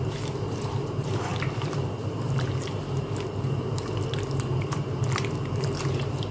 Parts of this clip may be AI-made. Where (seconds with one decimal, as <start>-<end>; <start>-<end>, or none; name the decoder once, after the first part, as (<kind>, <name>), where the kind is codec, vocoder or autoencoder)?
0.0-6.3 (vocoder, BigVGAN v2)